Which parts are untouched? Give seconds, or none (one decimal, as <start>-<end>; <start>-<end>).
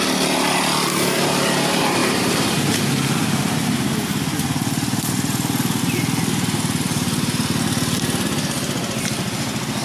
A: 0.0-9.8